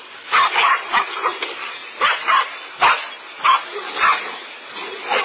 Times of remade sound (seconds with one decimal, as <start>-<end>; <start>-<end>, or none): none